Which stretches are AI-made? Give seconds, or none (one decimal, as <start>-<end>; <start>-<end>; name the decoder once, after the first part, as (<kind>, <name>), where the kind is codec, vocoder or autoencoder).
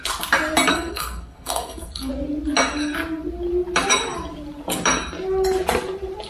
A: 0.7-2.1 (codec, SNAC)